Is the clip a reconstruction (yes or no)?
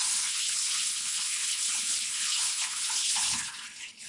yes